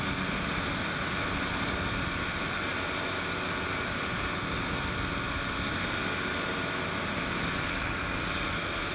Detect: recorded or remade recorded